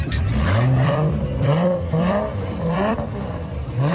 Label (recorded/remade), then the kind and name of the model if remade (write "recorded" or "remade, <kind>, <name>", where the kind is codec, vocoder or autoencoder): remade, vocoder, BigVGAN v2